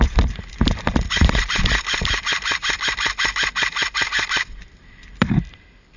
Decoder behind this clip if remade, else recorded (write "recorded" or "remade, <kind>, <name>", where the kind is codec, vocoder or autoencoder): remade, vocoder, BigVGAN v2